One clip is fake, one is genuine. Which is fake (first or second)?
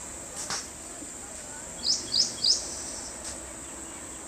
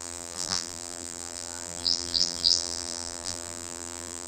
second